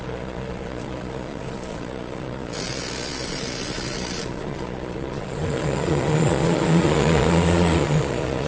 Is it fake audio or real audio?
fake